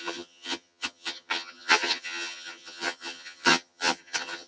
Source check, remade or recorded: remade